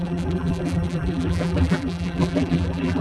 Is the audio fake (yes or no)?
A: yes